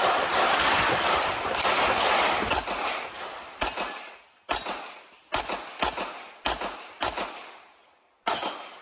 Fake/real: real